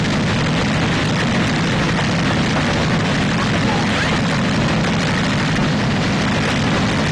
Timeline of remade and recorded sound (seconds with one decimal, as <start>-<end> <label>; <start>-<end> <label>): 0.0-5.6 recorded; 5.6-6.2 remade; 6.2-7.1 recorded